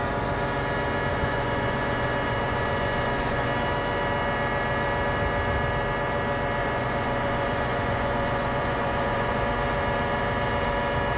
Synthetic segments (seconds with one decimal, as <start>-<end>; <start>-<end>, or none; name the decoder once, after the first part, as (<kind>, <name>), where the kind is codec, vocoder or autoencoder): 1.1-3.5 (vocoder, Vocos); 6.6-9.4